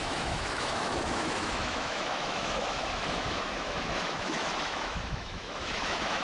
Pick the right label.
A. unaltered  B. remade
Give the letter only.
B